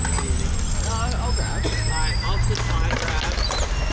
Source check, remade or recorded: recorded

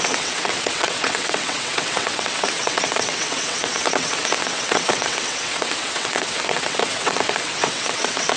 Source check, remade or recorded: remade